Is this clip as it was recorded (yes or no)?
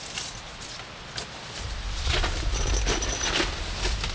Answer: yes